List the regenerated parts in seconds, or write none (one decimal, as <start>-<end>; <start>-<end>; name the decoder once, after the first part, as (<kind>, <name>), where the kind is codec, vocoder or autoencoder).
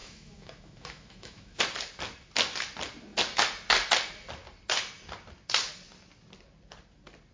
0.0-1.6 (autoencoder, DAC-VAE)